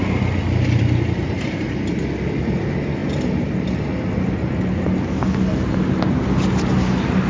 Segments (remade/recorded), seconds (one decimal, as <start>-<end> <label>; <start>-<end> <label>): 0.0-7.3 recorded